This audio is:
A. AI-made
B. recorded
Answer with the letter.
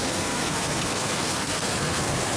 A